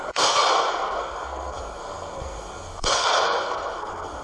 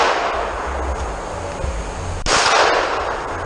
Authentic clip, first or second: second